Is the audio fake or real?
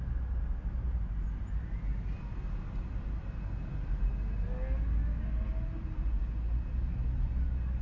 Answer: real